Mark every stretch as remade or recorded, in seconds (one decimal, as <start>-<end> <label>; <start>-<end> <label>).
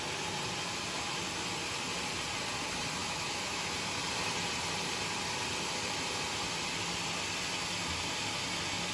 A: 0.0-3.0 recorded; 3.0-3.7 remade; 3.7-8.9 recorded